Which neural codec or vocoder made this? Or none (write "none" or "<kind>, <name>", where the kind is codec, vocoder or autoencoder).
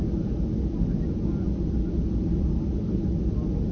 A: none